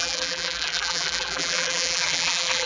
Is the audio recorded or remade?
remade